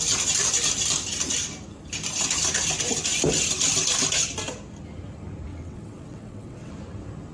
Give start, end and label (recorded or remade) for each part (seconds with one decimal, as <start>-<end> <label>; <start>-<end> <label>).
0.0-5.5 recorded; 5.5-6.7 remade; 6.7-7.3 recorded

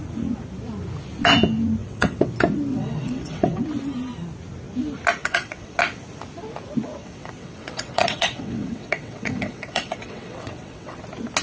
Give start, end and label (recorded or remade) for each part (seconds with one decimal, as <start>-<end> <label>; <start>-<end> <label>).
0.0-1.8 recorded; 1.8-2.3 remade; 2.3-2.7 recorded; 2.7-3.6 remade; 3.6-5.2 recorded; 5.2-5.8 remade; 5.8-7.0 recorded; 7.0-11.0 remade; 11.0-11.4 recorded

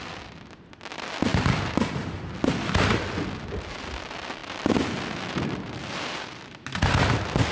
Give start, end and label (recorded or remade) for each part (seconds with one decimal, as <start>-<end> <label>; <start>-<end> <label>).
0.0-7.5 recorded

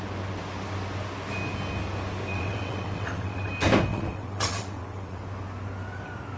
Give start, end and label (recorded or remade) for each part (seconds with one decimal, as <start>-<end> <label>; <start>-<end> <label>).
0.0-2.3 recorded; 2.3-3.5 remade; 3.5-3.9 recorded; 3.9-5.2 remade; 5.2-6.4 recorded

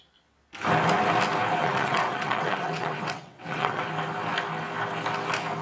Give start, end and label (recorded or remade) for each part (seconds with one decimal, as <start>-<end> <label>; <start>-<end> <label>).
0.0-1.6 recorded; 1.6-3.8 remade; 3.8-5.6 recorded

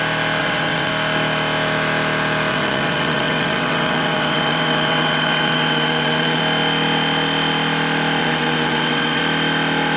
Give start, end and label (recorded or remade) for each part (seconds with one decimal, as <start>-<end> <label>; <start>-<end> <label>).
0.0-0.4 recorded; 0.4-0.9 remade; 0.9-2.5 recorded; 2.5-6.4 remade; 6.4-8.2 recorded; 8.2-9.2 remade; 9.2-10.0 recorded

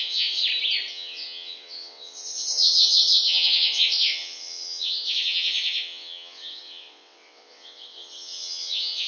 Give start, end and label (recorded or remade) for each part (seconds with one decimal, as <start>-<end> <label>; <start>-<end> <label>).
0.0-0.4 remade; 0.4-0.9 recorded; 0.9-9.1 remade